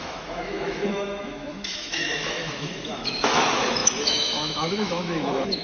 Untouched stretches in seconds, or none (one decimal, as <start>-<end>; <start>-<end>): none